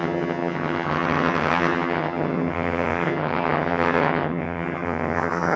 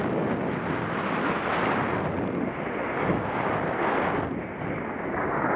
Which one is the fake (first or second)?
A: first